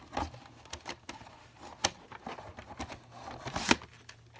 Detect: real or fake real